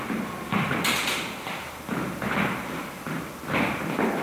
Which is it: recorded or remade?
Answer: recorded